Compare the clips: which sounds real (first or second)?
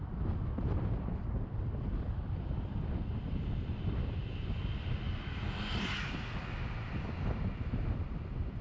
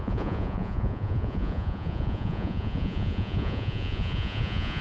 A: first